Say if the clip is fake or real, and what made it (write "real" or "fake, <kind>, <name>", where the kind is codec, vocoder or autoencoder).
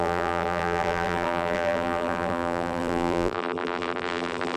fake, vocoder, BigVGAN v2